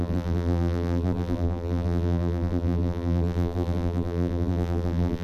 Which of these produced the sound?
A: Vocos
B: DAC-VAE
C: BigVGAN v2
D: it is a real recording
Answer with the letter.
C